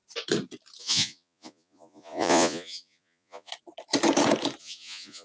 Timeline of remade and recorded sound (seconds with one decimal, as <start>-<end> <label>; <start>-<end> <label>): 0.0-0.8 recorded; 0.8-3.5 remade; 3.5-4.6 recorded; 4.6-5.2 remade